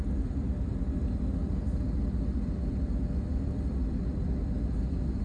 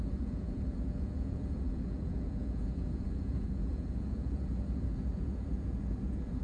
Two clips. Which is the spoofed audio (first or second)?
second